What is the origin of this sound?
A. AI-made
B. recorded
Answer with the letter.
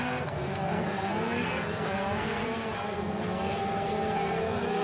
A